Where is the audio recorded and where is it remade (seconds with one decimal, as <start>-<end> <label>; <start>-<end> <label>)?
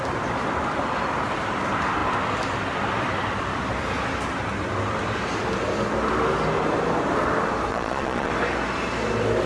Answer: 0.0-7.7 recorded; 7.7-8.3 remade; 8.3-9.5 recorded